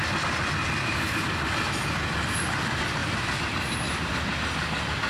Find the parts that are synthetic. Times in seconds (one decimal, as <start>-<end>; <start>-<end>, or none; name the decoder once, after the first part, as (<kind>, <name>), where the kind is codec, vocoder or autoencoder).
none